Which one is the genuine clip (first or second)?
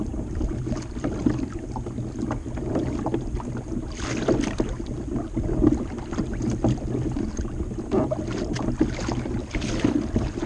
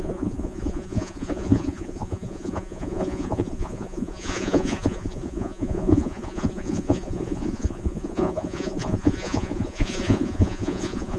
first